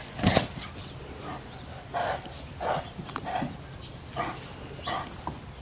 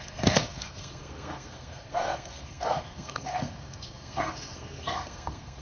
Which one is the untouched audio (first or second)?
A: first